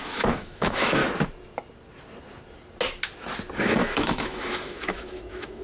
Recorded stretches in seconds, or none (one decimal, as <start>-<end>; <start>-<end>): 1.0-3.6